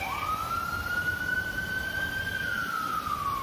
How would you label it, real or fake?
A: real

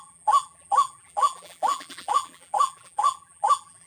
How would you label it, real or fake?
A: fake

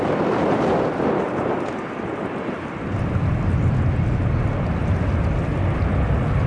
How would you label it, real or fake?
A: real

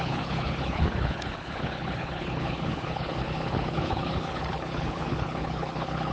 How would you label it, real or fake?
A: fake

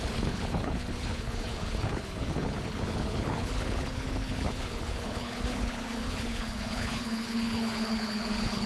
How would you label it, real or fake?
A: fake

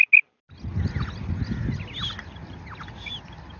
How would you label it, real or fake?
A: real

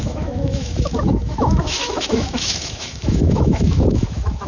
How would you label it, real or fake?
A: fake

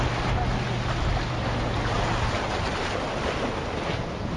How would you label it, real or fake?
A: real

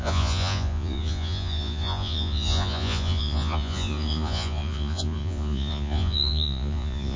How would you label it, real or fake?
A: fake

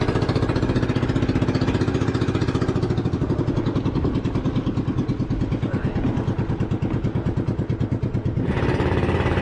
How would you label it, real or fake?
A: real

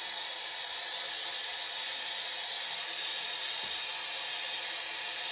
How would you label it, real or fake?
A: real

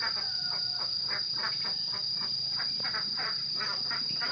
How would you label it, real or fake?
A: real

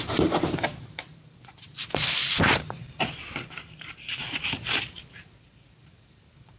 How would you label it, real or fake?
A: fake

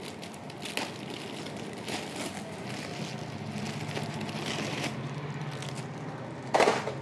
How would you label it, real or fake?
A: real